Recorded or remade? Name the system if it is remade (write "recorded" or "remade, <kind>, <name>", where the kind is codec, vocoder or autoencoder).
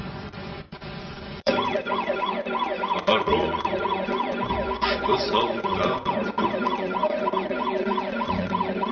remade, vocoder, Vocos